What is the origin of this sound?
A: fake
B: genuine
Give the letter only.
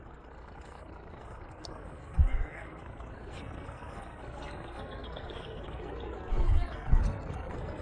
A